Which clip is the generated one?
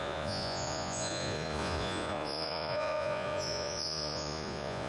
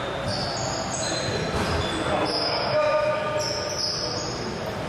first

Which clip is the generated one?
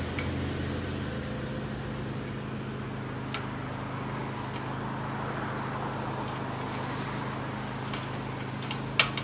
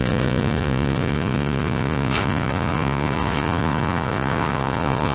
second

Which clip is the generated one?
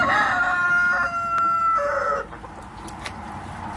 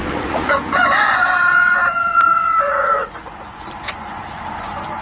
second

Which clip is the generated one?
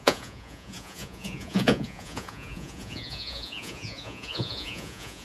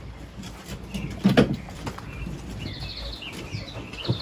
first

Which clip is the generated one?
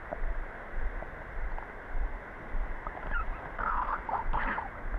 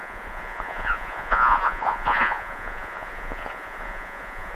second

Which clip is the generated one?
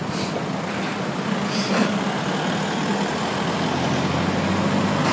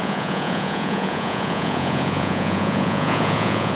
second